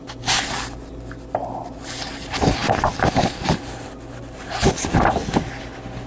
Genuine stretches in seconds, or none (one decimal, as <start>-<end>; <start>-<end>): 0.0-6.1